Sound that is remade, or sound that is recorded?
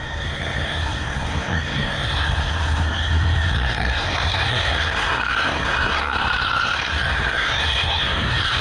remade